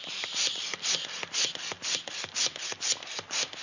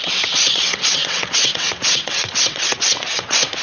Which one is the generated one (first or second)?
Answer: second